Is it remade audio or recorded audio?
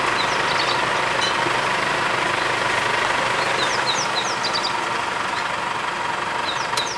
recorded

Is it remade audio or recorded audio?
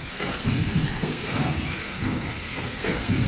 remade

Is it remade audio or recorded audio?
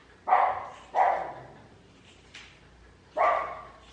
remade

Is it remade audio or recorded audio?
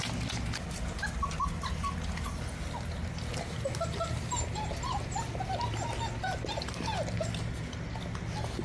recorded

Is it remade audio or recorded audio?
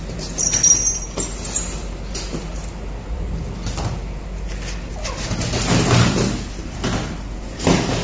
recorded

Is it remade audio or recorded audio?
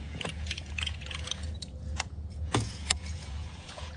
remade